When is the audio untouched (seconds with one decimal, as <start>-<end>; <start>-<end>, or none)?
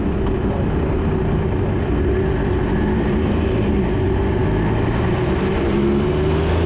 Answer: 0.0-6.7